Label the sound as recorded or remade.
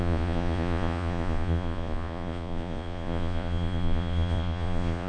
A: remade